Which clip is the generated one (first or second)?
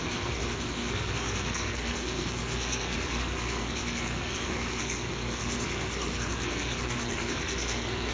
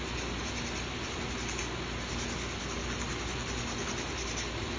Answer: first